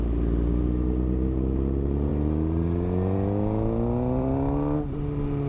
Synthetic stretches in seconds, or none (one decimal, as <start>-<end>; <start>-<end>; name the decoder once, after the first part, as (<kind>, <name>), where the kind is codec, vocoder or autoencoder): none